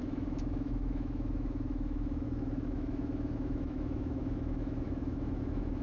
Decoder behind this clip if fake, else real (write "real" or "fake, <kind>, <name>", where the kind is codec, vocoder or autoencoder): fake, autoencoder, DAC-VAE